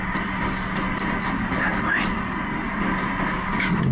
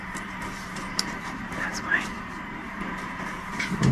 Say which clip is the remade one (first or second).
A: second